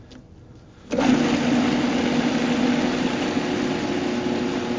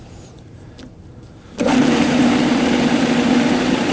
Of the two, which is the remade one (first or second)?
second